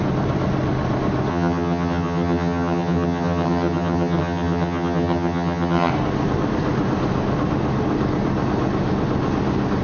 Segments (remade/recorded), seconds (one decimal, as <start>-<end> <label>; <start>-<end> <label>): 0.0-1.3 recorded; 1.3-5.9 remade; 5.9-9.8 recorded